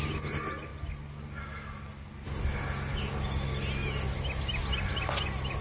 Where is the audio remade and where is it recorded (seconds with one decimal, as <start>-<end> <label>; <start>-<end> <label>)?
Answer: 0.0-5.6 recorded